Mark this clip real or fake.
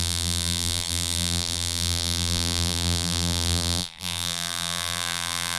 fake